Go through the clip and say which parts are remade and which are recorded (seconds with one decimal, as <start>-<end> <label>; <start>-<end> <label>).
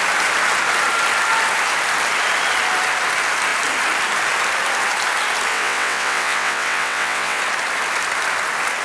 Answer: 0.0-5.5 recorded; 5.5-7.4 remade; 7.4-8.8 recorded